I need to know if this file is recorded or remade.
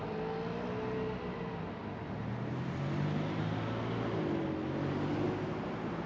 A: recorded